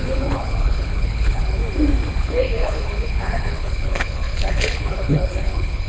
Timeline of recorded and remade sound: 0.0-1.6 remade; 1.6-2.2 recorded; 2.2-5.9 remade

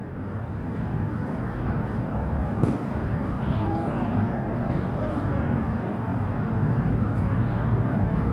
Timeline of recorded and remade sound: 0.0-8.3 remade

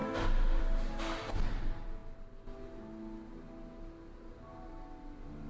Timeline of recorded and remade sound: 0.0-5.5 recorded

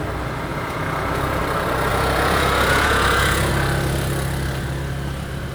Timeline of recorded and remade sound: 0.0-0.5 recorded; 0.5-1.4 remade; 1.4-1.9 recorded; 1.9-3.5 remade; 3.5-5.5 recorded

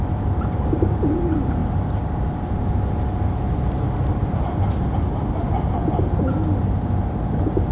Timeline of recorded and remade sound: 0.0-7.7 recorded

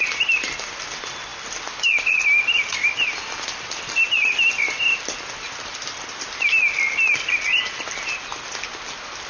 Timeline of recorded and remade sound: 0.0-9.3 recorded